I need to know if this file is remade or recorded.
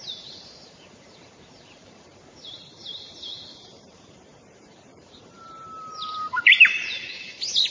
remade